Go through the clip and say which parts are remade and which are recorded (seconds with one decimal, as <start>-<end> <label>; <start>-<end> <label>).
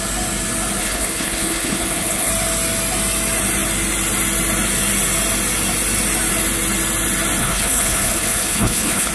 0.0-0.8 recorded; 0.8-2.3 remade; 2.3-7.4 recorded; 7.4-9.1 remade